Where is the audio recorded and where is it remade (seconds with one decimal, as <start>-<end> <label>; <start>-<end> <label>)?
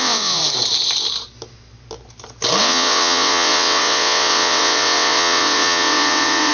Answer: 0.0-0.4 remade; 0.4-2.6 recorded; 2.6-6.5 remade